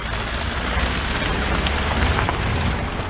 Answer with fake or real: real